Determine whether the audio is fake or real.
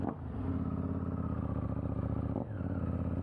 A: real